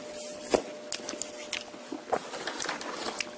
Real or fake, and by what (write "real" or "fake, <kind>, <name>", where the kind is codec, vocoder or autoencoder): real